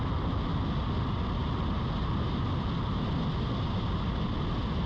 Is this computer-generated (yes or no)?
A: no